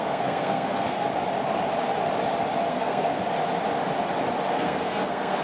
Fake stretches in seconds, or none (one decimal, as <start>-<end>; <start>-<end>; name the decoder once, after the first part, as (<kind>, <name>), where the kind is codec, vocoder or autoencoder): 0.0-1.1 (codec, SNAC); 2.7-3.2; 4.5-5.4